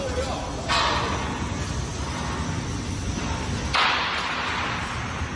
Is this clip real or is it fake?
real